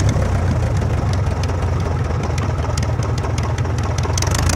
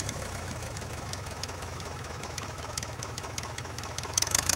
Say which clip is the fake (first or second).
second